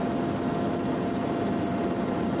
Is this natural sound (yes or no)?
yes